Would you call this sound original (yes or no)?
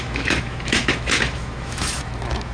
no